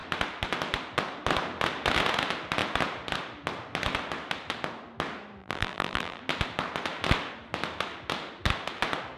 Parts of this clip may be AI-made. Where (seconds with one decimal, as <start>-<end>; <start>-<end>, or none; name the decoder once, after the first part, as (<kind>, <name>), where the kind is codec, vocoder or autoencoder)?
5.4-6.2 (vocoder, BigVGAN v2)